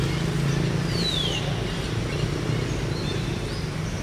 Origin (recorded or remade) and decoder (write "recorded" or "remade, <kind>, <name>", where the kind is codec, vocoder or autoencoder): recorded